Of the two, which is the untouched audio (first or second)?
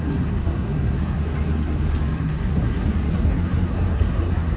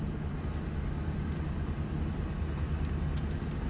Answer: second